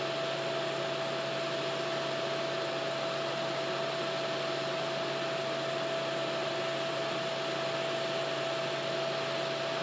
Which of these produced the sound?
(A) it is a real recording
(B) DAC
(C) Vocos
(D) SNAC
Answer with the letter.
A